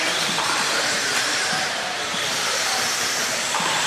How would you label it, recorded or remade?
remade